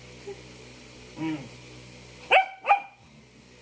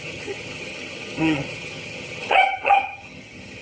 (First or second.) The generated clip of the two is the second